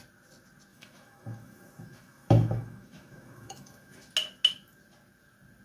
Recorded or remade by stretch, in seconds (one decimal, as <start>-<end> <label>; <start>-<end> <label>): 0.0-0.7 recorded; 0.7-4.1 remade; 4.1-5.6 recorded